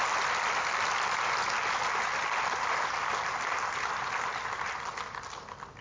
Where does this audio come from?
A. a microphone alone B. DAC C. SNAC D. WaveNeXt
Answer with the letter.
A